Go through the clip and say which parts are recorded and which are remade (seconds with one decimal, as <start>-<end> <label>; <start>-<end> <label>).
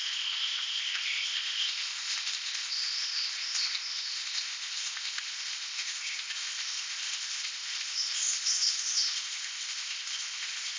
0.0-10.8 remade